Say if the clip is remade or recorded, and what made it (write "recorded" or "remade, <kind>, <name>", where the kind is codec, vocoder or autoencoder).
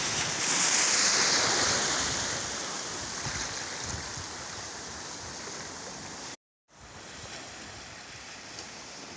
recorded